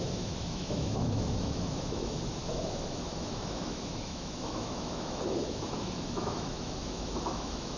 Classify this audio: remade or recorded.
remade